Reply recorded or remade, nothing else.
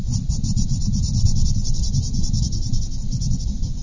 recorded